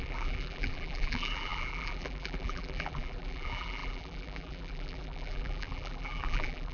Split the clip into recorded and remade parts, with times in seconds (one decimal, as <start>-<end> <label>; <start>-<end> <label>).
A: 0.0-6.7 remade

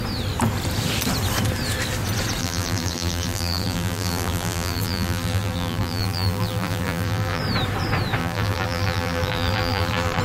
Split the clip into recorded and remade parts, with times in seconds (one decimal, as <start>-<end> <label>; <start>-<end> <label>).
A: 0.0-2.4 recorded; 2.4-7.4 remade; 7.4-8.2 recorded; 8.2-10.2 remade

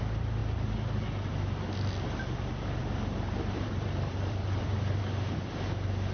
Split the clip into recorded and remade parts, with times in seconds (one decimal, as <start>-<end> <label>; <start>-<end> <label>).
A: 0.0-2.8 recorded; 2.8-5.0 remade; 5.0-6.1 recorded

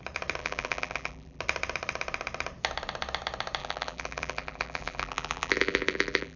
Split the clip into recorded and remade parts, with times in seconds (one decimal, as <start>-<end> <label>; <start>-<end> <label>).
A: 0.0-0.4 recorded; 0.4-1.4 remade; 1.4-3.6 recorded; 3.6-6.4 remade

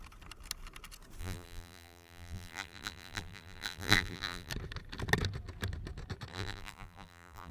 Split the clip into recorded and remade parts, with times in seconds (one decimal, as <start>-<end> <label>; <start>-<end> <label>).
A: 0.0-1.2 recorded; 1.2-4.5 remade; 4.5-6.3 recorded; 6.3-7.5 remade

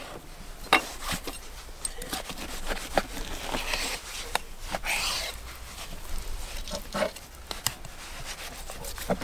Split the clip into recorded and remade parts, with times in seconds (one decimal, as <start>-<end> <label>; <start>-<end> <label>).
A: 0.0-9.2 recorded